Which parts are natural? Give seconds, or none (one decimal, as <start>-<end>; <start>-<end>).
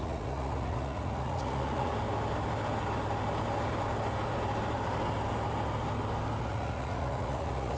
1.9-6.4